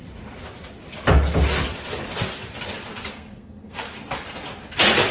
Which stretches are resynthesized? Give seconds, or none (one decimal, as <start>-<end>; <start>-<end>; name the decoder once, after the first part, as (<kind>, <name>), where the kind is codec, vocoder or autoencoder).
3.1-3.9 (codec, SNAC)